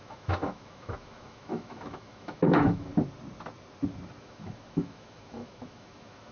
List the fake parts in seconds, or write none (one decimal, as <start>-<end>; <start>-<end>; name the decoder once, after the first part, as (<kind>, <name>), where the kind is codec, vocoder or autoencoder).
0.0-2.9 (autoencoder, DAC-VAE); 4.2-6.3